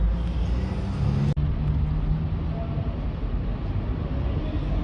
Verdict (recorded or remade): recorded